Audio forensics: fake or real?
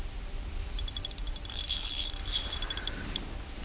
fake